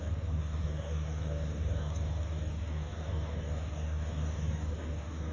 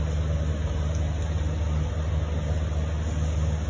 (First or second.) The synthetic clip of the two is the first